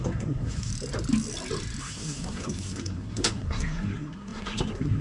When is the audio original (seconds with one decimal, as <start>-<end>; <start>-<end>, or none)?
0.7-1.8

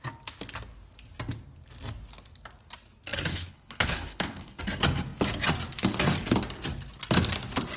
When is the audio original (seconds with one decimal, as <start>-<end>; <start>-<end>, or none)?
0.0-3.3; 4.6-7.8

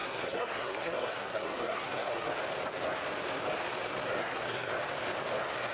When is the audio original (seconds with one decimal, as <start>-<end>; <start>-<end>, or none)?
2.3-4.2; 4.7-5.7

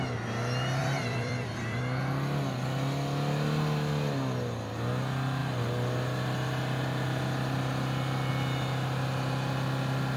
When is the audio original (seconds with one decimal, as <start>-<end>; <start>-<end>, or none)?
0.0-0.8; 1.8-10.2

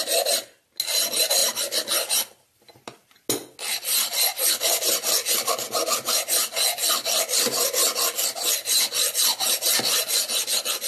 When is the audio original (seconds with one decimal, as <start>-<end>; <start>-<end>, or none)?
0.0-10.9

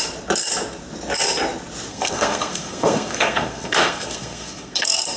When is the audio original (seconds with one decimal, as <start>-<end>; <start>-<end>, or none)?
0.0-1.9

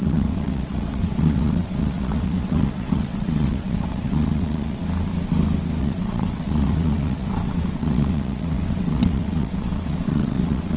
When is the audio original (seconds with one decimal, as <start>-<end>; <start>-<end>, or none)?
4.8-5.8